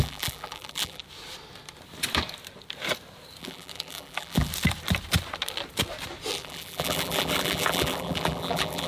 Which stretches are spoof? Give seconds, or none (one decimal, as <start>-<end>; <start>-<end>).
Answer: 0.0-1.0; 3.4-4.5; 6.3-8.9